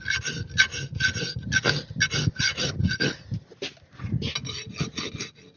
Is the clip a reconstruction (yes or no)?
no